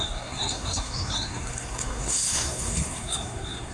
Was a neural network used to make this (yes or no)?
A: yes